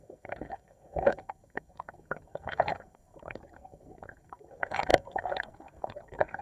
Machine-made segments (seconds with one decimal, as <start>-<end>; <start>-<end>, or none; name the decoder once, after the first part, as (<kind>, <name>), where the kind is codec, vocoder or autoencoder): 0.0-6.4 (codec, SNAC)